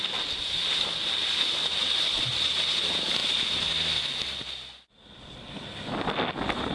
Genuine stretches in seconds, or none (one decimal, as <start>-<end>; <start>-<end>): 0.0-6.7